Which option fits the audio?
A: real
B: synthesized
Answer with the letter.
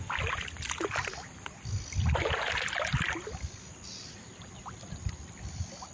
A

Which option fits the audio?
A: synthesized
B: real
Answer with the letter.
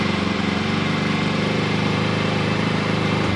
A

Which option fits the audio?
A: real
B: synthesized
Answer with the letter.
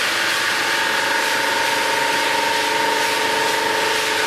A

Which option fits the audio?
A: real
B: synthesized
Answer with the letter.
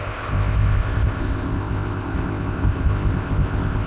B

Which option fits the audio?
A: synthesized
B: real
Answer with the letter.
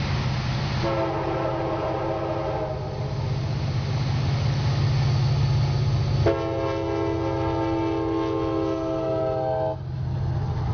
B